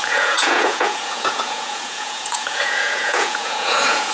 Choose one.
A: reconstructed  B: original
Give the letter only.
A